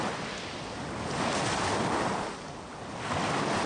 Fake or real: real